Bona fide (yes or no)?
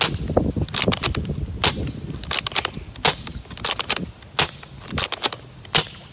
yes